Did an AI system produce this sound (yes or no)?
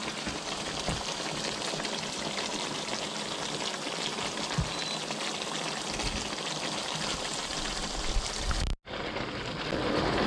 no